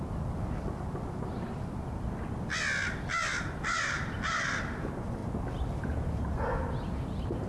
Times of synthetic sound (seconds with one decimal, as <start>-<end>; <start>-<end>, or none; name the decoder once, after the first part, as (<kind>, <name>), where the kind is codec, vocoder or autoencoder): none